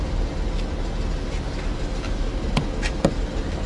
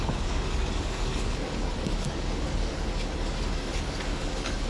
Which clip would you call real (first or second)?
first